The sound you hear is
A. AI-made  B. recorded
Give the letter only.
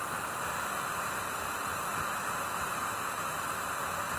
B